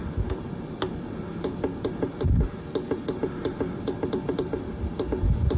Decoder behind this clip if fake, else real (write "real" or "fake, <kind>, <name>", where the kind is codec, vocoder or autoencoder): real